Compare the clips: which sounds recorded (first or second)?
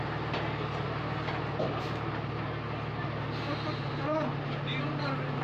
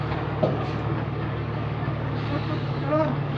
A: first